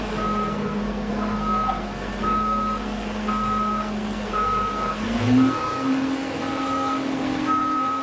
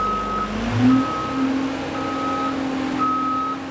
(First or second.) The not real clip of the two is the first